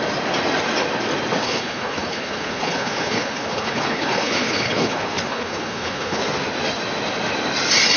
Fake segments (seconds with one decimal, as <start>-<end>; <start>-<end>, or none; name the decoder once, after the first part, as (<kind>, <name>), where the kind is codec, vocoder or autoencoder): 1.4-6.2 (codec, HILCodec)